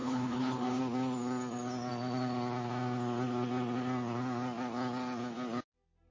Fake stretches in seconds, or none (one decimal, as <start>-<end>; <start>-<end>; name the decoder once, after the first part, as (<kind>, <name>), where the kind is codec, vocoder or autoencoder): 0.0-0.8 (codec, HILCodec)